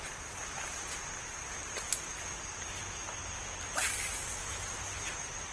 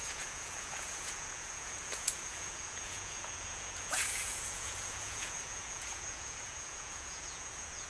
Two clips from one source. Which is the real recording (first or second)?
first